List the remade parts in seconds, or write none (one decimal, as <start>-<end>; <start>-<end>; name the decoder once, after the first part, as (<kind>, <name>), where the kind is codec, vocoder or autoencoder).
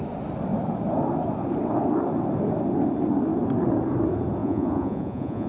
4.4-5.5 (vocoder, Vocos)